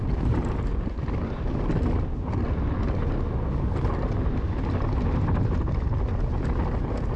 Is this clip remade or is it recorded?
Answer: recorded